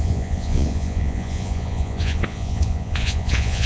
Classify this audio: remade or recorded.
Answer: remade